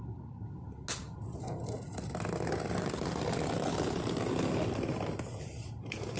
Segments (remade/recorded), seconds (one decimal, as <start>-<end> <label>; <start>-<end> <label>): 0.0-6.2 recorded